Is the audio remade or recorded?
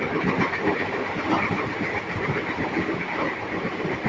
remade